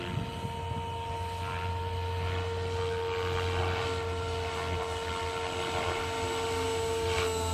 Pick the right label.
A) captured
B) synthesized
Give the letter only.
A